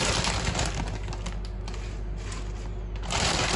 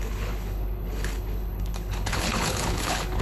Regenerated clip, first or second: second